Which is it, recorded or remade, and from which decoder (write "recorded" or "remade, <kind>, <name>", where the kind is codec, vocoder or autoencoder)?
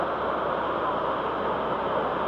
recorded